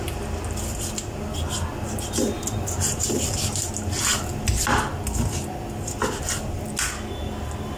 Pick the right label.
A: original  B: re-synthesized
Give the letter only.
A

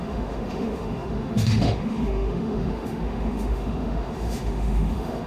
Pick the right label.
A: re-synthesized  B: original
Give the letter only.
A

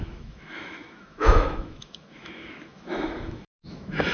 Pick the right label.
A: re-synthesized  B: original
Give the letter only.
A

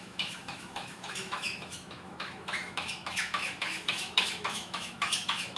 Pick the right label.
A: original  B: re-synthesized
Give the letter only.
B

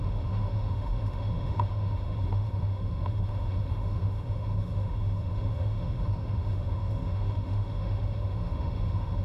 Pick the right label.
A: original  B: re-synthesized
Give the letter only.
B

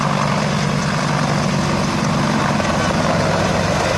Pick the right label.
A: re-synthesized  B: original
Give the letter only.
B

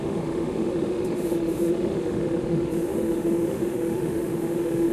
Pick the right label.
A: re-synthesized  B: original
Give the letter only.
A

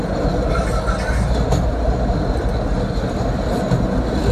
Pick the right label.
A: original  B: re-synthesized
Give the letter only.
A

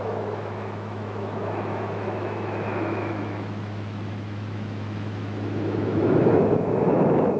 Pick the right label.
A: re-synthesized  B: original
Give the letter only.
A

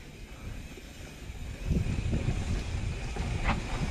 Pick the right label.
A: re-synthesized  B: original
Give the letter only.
B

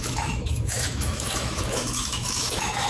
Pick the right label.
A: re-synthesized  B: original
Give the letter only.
A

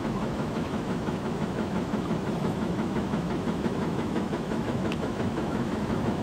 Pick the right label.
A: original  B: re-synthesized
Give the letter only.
B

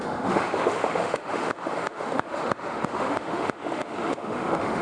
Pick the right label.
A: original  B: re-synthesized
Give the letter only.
B